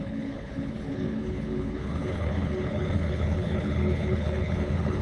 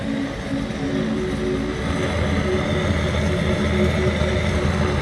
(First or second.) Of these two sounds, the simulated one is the first